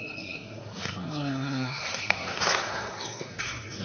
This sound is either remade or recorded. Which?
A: remade